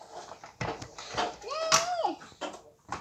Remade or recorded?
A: recorded